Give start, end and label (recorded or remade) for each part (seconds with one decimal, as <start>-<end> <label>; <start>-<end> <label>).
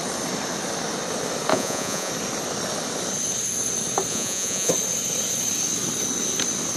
0.0-1.5 recorded; 1.5-2.1 remade; 2.1-4.1 recorded; 4.1-4.7 remade; 4.7-6.8 recorded